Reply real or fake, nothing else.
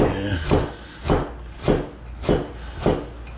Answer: real